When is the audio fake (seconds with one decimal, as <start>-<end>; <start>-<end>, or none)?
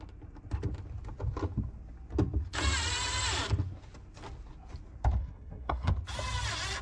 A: 5.2-5.9